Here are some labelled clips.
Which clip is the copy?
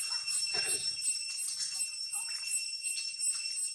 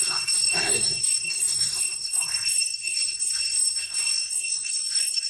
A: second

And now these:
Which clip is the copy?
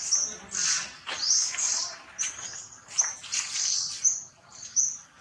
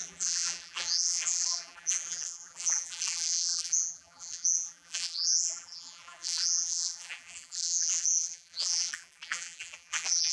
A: second